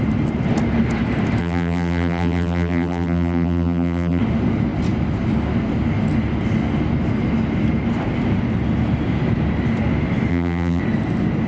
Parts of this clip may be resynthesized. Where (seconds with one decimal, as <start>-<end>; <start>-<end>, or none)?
1.4-4.2; 10.3-10.8